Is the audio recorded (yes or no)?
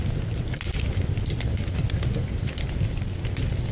yes